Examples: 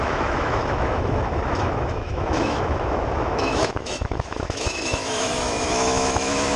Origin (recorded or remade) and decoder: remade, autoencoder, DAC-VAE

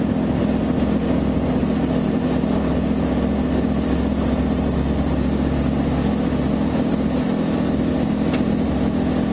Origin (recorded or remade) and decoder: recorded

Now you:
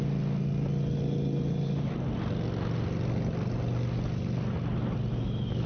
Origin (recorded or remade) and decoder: recorded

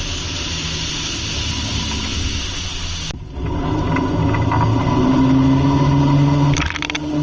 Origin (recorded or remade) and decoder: recorded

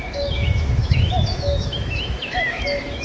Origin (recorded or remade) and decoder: remade, autoencoder, DAC-VAE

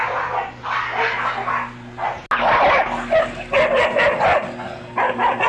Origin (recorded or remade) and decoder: recorded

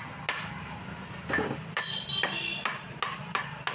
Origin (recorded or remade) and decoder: recorded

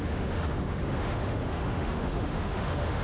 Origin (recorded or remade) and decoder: remade, autoencoder, DAC-VAE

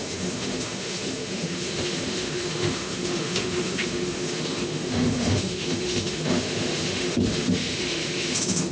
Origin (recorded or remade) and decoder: remade, autoencoder, DAC-VAE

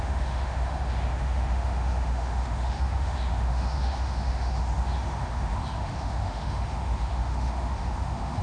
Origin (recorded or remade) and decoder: remade, autoencoder, DAC-VAE